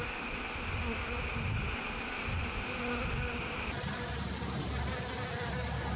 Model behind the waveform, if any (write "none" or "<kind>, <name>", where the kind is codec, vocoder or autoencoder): none